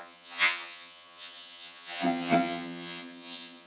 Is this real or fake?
fake